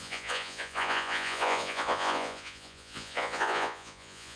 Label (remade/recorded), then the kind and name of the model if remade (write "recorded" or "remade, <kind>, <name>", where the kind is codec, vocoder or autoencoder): remade, vocoder, Vocos